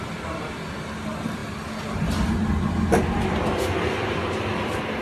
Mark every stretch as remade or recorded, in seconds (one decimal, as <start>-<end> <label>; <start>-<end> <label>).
0.0-1.4 remade; 1.4-3.2 recorded; 3.2-5.0 remade